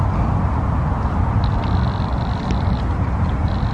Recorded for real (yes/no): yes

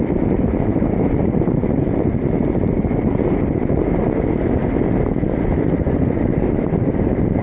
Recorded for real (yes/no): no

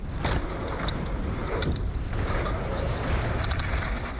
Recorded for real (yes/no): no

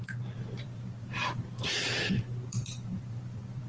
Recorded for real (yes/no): no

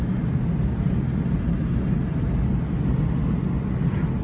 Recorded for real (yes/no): yes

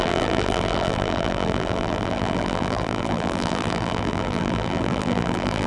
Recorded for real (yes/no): no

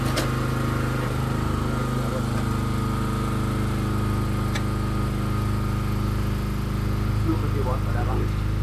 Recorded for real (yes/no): yes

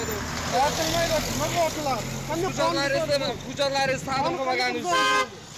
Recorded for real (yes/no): yes